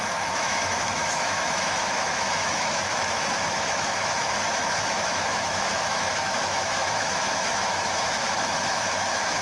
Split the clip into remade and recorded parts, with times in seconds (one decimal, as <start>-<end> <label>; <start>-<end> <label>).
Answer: 0.0-9.4 remade